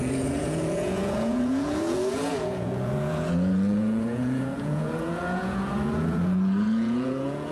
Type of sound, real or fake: fake